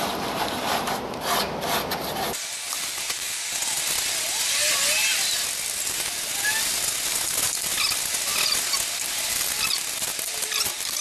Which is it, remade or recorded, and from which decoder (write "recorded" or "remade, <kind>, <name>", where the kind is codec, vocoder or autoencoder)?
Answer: recorded